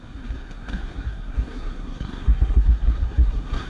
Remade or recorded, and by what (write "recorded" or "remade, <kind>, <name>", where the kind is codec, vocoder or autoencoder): remade, codec, SNAC